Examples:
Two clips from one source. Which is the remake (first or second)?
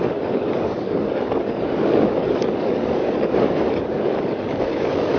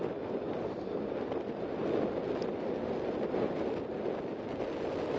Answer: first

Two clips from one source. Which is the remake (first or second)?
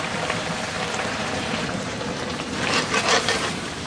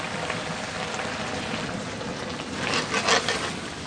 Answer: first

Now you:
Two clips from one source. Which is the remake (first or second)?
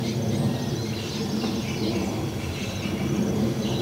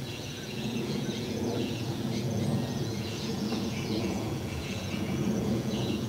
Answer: second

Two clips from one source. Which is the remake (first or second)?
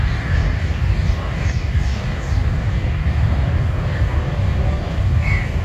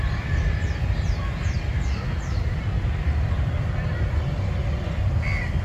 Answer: first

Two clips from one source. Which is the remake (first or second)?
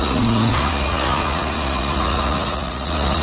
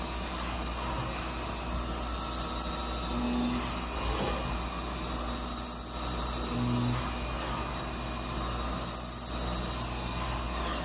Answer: first